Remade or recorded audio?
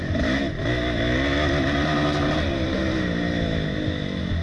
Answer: recorded